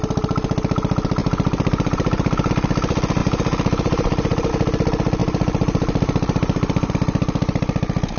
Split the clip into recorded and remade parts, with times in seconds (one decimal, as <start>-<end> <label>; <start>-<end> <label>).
0.0-1.2 recorded; 1.2-2.5 remade; 2.5-3.2 recorded; 3.2-4.5 remade; 4.5-5.2 recorded; 5.2-6.9 remade; 6.9-8.2 recorded